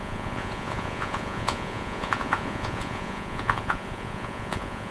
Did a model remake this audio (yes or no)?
yes